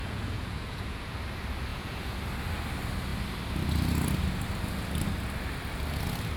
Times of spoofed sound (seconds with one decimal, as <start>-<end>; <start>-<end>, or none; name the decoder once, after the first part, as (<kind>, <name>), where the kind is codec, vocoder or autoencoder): 0.0-1.0 (vocoder, Vocos); 1.7-2.2